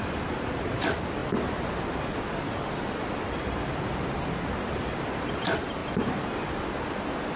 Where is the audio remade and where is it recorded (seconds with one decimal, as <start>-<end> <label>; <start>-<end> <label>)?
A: 0.0-7.4 recorded